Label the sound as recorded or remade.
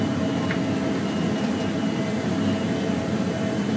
recorded